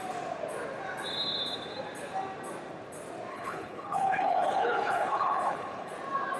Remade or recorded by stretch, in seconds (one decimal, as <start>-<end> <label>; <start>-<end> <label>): 0.0-3.3 recorded; 3.3-5.9 remade; 5.9-6.4 recorded